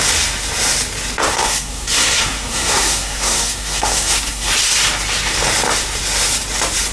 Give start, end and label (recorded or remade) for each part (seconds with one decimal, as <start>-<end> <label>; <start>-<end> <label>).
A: 0.0-1.3 recorded; 1.3-4.5 remade; 4.5-6.9 recorded